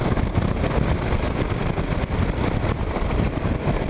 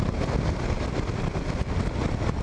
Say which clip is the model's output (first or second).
first